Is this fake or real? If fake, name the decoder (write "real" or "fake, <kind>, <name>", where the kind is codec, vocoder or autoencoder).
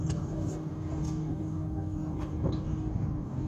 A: fake, codec, DAC